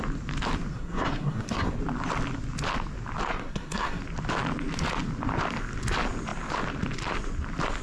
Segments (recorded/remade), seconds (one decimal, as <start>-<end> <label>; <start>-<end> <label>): 0.0-0.7 recorded; 0.7-1.8 remade; 1.8-3.3 recorded; 3.3-4.0 remade; 4.0-7.8 recorded